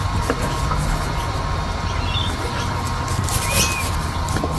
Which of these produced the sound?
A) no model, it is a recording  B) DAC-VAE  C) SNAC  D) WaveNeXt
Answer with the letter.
A